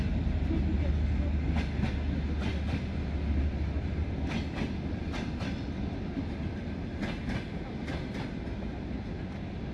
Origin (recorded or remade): recorded